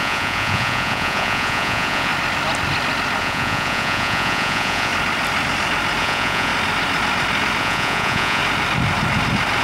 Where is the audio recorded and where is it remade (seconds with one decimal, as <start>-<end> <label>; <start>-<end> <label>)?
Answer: 0.0-2.1 remade; 2.1-3.2 recorded; 3.2-4.9 remade; 4.9-6.0 recorded; 6.0-6.5 remade; 6.5-7.6 recorded; 7.6-8.4 remade; 8.4-9.6 recorded

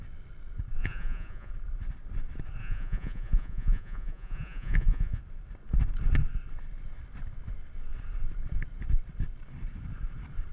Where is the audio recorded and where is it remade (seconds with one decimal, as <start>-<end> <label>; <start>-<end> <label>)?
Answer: 0.0-0.8 recorded; 0.8-1.5 remade; 1.5-2.6 recorded; 2.6-5.2 remade; 5.2-10.5 recorded

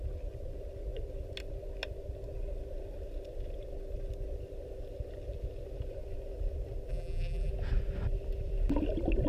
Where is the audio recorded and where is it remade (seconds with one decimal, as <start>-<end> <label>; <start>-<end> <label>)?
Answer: 0.0-6.9 recorded; 6.9-7.5 remade; 7.5-9.3 recorded

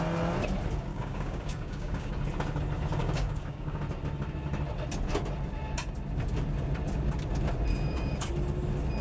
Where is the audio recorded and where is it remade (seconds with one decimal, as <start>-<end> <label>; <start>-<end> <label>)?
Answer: 0.0-0.9 recorded; 0.9-2.1 remade; 2.1-3.0 recorded; 3.0-3.8 remade; 3.8-7.7 recorded; 7.7-8.3 remade; 8.3-9.0 recorded

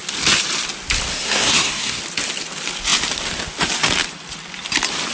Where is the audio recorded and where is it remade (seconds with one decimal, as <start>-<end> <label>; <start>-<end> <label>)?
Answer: 0.0-1.1 recorded; 1.1-2.0 remade; 2.0-5.1 recorded

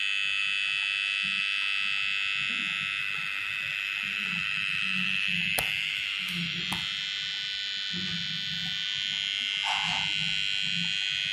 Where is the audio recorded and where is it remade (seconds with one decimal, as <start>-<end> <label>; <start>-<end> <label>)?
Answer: 0.0-3.0 recorded; 3.0-6.6 remade; 6.6-11.3 recorded

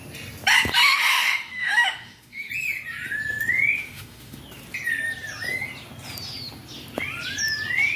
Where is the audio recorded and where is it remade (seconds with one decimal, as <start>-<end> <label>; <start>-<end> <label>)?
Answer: 0.0-0.8 recorded; 0.8-2.5 remade; 2.5-3.8 recorded; 3.8-4.4 remade; 4.4-8.0 recorded